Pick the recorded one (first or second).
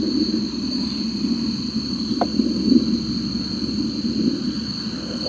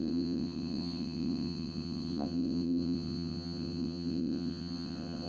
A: first